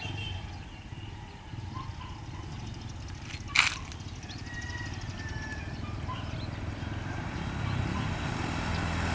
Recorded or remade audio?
recorded